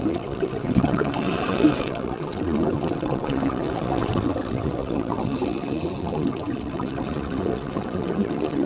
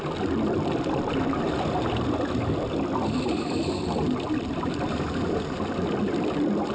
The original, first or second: second